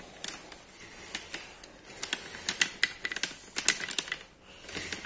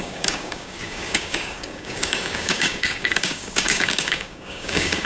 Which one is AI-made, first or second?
second